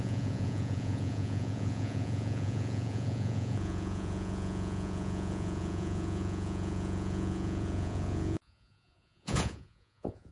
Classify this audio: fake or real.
fake